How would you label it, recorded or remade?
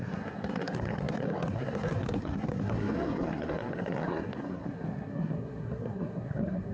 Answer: remade